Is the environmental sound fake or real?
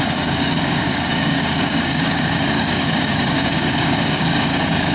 fake